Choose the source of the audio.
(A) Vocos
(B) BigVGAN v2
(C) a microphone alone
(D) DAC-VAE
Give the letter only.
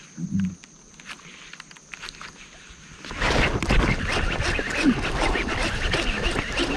C